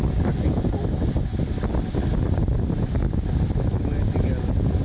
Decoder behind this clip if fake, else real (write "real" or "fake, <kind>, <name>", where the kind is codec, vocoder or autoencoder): real